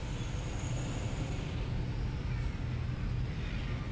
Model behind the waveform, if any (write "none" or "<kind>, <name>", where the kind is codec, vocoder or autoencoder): none